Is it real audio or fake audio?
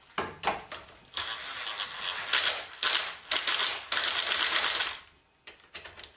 real